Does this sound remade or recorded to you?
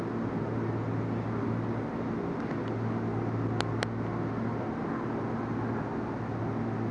recorded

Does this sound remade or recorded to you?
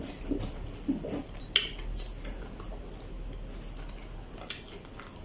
recorded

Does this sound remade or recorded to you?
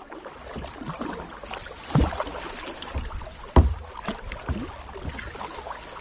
recorded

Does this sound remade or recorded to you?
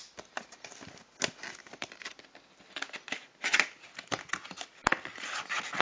recorded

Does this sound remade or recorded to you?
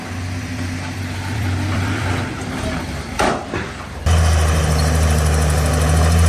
remade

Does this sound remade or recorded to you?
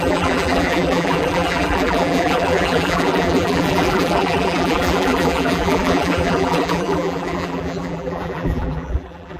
remade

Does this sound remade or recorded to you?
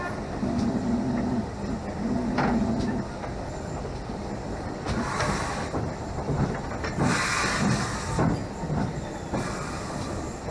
recorded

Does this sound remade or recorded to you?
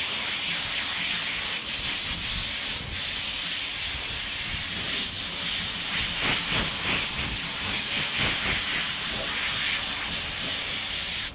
recorded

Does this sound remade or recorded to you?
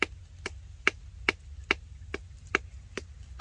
recorded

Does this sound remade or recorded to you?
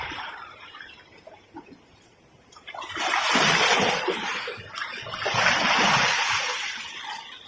remade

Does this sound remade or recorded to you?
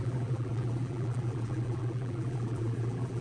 remade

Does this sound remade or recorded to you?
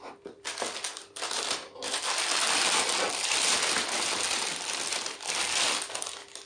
recorded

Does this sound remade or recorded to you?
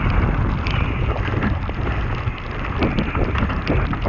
recorded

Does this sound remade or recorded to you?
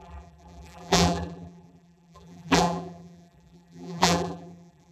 remade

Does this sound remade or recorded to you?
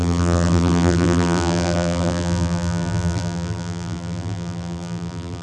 remade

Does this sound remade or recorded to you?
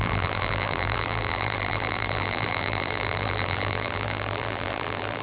remade